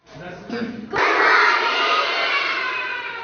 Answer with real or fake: fake